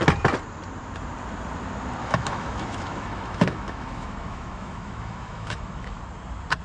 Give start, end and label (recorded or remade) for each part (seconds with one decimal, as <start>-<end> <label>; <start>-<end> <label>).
0.0-2.0 recorded; 2.0-6.0 remade; 6.0-6.6 recorded